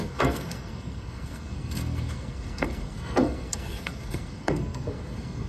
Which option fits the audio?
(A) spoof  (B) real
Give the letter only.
A